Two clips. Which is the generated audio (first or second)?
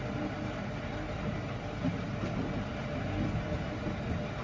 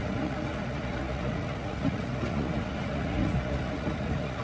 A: second